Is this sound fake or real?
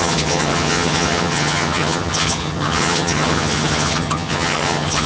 fake